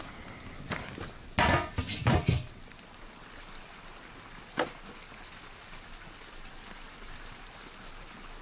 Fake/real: real